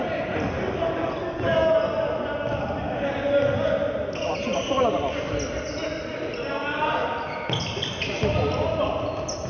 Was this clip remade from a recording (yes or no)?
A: no